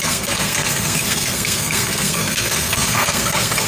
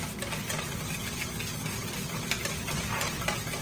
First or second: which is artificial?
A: first